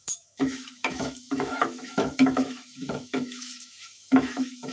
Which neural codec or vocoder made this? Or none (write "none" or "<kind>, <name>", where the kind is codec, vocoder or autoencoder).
autoencoder, DAC-VAE